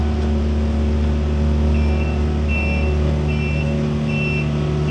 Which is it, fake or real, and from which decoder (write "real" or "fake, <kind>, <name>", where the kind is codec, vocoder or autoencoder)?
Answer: real